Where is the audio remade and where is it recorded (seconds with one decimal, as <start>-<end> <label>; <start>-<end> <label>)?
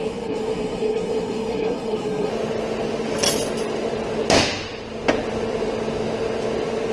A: 0.0-2.3 remade; 2.3-6.9 recorded